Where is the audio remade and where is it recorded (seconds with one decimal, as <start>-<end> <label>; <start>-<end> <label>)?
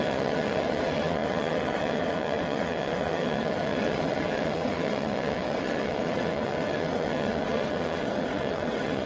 0.0-9.1 remade